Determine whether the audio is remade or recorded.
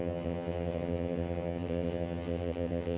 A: remade